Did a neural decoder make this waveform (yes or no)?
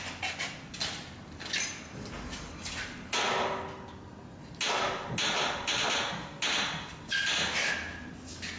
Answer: no